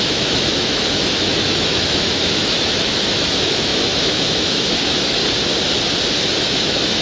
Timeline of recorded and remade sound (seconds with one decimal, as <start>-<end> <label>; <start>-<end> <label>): 0.0-5.2 remade; 5.2-6.3 recorded; 6.3-7.0 remade